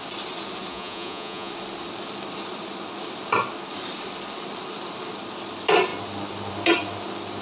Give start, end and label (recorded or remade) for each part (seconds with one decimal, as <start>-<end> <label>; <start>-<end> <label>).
0.0-0.7 recorded; 0.7-1.5 remade; 1.5-7.4 recorded